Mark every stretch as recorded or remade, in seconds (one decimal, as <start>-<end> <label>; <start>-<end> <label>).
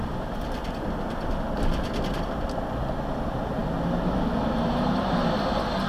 0.0-3.6 remade; 3.6-5.9 recorded